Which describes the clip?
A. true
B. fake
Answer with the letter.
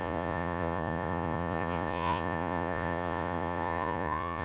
B